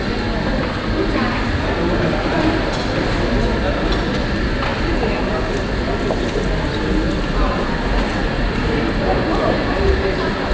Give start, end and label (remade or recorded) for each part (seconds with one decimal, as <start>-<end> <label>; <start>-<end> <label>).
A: 0.0-10.5 recorded